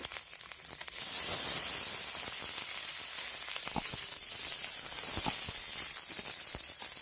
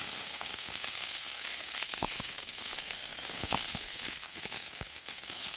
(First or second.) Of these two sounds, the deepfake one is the second